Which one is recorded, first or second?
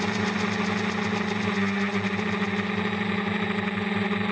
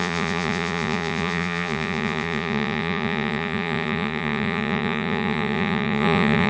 first